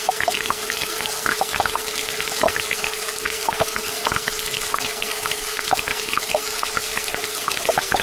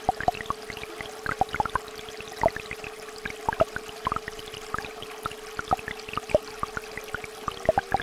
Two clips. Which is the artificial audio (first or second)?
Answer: first